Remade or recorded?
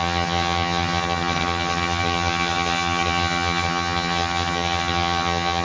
remade